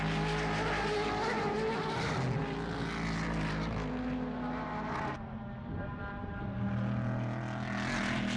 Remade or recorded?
recorded